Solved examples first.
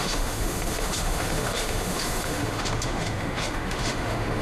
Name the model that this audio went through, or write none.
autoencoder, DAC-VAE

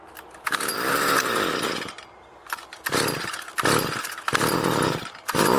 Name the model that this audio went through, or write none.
none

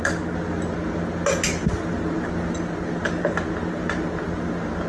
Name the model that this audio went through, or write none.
none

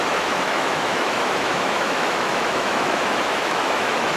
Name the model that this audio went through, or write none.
autoencoder, DAC-VAE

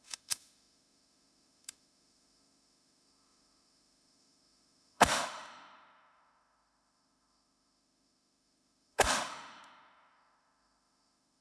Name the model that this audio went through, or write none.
autoencoder, DAC-VAE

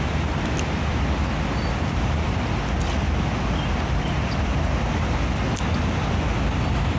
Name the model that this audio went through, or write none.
none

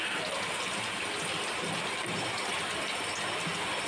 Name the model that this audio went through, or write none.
none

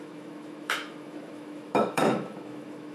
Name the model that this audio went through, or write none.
autoencoder, DAC-VAE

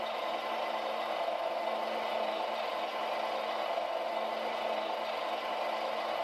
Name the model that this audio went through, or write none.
none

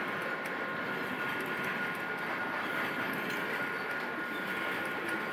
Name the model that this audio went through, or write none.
none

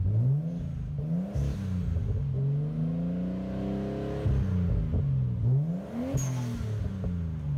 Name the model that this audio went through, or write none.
none